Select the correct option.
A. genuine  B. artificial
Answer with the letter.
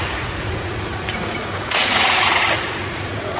B